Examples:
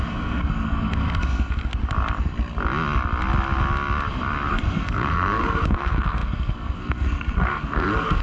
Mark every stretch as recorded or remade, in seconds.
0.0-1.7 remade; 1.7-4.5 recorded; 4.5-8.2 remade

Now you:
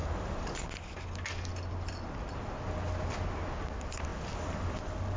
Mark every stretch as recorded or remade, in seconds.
0.0-5.2 recorded

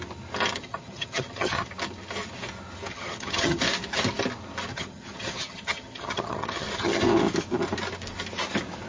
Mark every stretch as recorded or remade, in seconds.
0.0-0.6 recorded; 0.6-1.7 remade; 1.7-2.9 recorded; 2.9-3.6 remade; 3.6-4.7 recorded; 4.7-7.0 remade; 7.0-8.9 recorded